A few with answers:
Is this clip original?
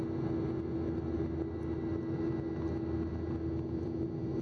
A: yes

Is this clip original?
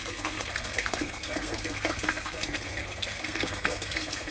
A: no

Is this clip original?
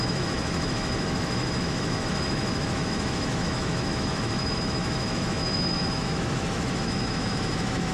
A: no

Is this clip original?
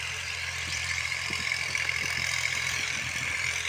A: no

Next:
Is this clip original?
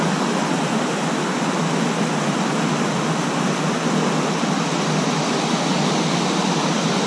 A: yes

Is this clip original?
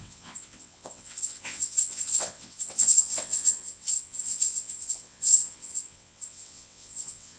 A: no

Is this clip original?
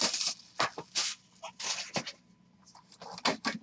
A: yes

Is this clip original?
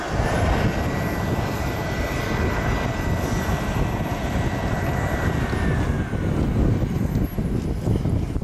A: yes